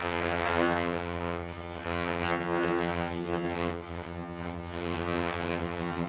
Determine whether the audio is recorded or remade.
remade